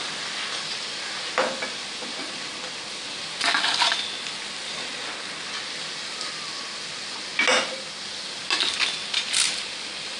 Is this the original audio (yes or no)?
yes